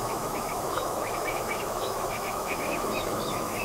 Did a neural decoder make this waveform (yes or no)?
yes